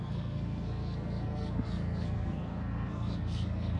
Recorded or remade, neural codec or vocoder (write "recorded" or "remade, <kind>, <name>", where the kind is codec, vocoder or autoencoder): remade, codec, SNAC